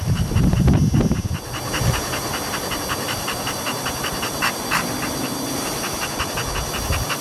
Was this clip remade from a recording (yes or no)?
no